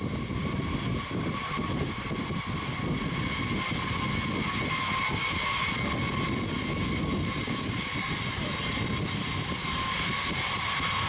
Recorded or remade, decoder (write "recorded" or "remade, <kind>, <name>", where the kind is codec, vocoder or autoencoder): recorded